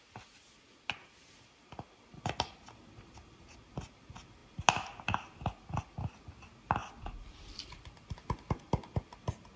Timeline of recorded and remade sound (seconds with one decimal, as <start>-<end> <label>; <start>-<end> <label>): 0.0-9.6 recorded